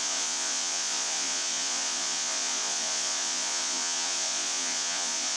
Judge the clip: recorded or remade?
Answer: remade